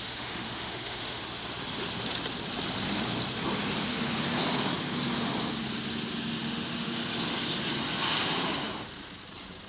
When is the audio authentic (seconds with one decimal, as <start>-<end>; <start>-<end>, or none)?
1.2-6.4; 7.0-9.7